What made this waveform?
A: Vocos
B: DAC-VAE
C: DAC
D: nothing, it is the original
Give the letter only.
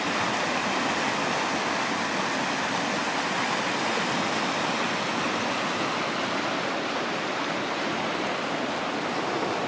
D